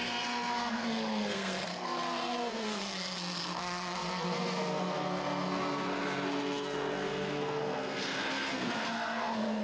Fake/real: fake